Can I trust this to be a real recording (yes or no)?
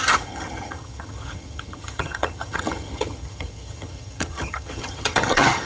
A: no